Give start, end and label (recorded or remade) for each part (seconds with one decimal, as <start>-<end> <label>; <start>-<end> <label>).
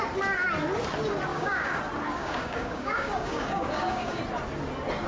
0.0-1.3 recorded; 1.3-1.8 remade; 1.8-2.2 recorded; 2.2-4.2 remade; 4.2-5.1 recorded